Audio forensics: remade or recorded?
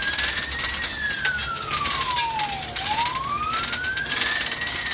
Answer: recorded